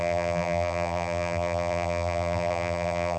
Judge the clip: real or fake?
fake